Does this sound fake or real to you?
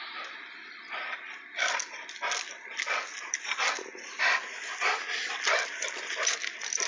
real